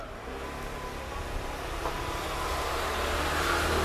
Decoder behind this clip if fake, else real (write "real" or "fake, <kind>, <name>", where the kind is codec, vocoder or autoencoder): real